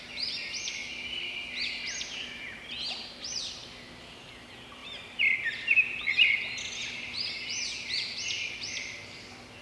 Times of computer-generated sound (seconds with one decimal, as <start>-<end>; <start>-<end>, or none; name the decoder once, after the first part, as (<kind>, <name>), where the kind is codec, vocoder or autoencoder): 0.8-4.3 (vocoder, BigVGAN v2); 6.8-7.3